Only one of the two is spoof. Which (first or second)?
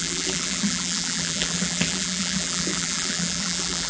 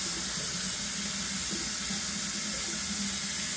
first